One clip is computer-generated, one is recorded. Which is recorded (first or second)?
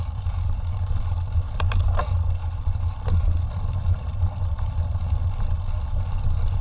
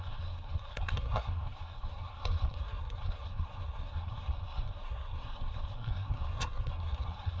first